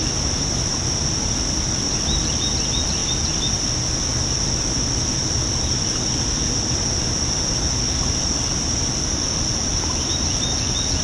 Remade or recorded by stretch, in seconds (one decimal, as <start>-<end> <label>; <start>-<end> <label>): 0.0-11.0 recorded